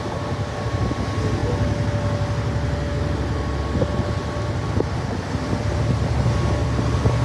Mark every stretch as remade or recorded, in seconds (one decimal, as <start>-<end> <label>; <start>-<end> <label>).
0.0-7.2 recorded